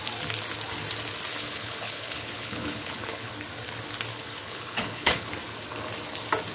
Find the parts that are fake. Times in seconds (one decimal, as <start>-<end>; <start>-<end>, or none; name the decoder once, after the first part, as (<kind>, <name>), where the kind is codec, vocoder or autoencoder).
1.3-3.3 (codec, HILCodec); 4.1-5.3